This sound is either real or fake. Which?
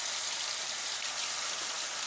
real